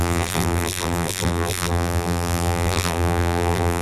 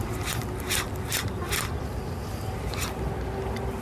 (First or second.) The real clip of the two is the second